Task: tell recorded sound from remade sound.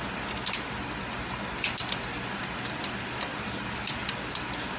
recorded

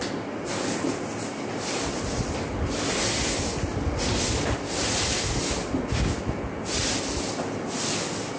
recorded